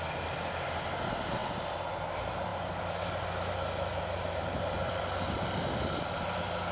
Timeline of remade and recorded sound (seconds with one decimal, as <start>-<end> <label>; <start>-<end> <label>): 0.0-6.7 recorded